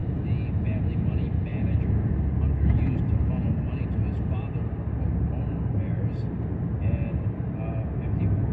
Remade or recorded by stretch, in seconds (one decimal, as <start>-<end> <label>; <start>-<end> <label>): 0.0-8.5 recorded